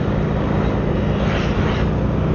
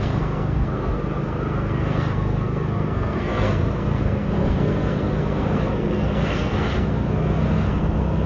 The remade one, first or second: second